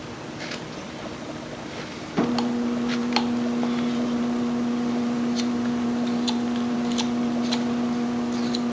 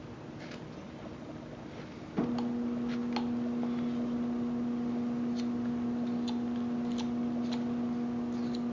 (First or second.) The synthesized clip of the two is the first